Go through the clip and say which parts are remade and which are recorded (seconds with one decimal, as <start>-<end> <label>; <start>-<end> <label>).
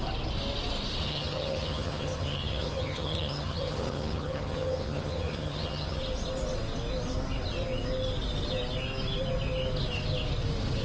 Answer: 0.0-1.0 recorded; 1.0-6.0 remade; 6.0-10.8 recorded